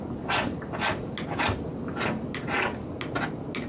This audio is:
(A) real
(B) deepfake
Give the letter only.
A